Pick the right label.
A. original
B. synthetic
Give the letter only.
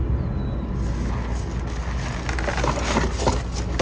A